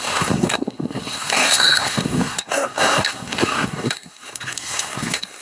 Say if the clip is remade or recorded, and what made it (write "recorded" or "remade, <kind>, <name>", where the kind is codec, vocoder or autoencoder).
remade, codec, SNAC